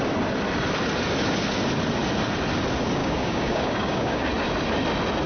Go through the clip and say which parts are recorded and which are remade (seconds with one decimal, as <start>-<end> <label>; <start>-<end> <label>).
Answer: 0.0-3.0 recorded; 3.0-4.3 remade; 4.3-5.3 recorded